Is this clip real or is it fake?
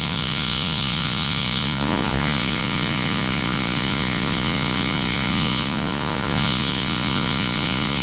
fake